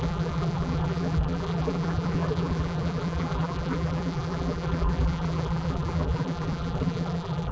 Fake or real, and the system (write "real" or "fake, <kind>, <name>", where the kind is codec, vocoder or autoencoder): fake, vocoder, BigVGAN v2